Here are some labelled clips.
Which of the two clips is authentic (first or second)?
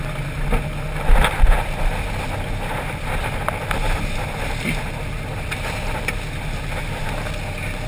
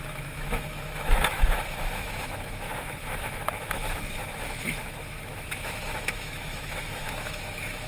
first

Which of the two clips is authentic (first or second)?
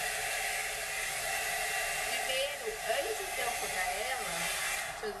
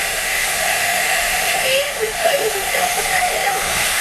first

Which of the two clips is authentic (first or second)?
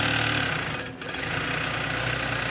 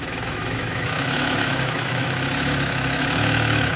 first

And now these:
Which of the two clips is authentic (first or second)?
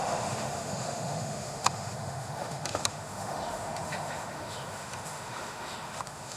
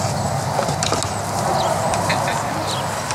second